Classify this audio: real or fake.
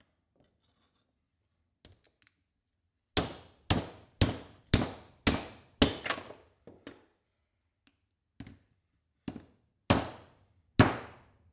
real